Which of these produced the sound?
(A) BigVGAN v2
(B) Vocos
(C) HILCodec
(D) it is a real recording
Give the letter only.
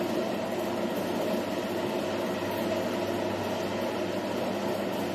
D